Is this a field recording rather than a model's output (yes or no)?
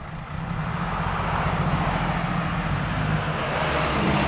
yes